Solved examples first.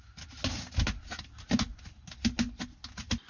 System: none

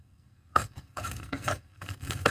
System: codec, SNAC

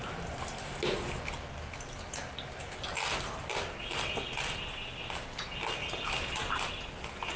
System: none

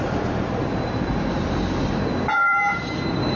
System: vocoder, BigVGAN v2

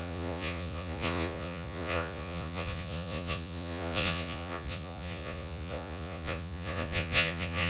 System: vocoder, Vocos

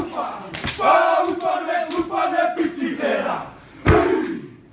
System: none